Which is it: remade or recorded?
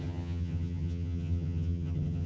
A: remade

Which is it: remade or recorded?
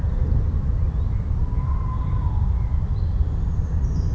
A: recorded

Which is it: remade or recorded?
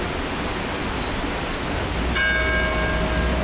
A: recorded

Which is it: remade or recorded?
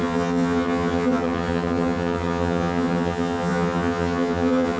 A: remade